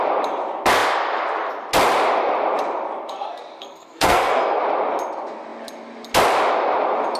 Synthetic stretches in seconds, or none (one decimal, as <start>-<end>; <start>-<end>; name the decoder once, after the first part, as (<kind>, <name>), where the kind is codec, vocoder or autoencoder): 3.6-4.6 (codec, SNAC)